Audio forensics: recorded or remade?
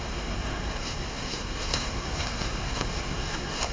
remade